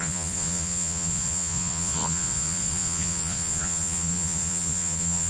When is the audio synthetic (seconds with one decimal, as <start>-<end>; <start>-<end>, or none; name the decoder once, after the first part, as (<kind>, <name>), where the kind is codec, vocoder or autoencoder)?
0.0-5.3 (vocoder, Vocos)